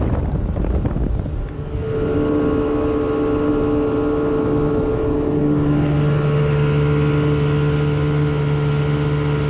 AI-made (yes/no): no